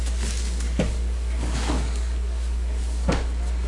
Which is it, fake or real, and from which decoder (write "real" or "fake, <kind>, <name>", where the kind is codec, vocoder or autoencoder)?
fake, codec, DAC